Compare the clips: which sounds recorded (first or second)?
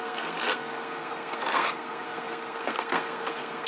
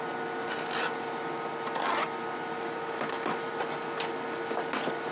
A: second